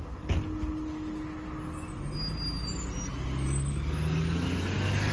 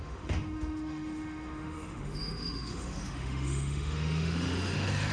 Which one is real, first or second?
first